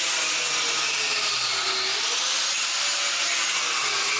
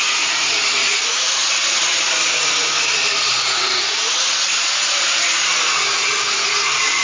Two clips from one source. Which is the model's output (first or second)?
second